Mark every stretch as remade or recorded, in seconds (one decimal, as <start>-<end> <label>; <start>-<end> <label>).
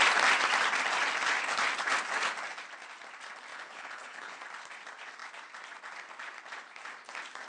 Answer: 0.0-3.5 recorded; 3.5-4.4 remade; 4.4-7.5 recorded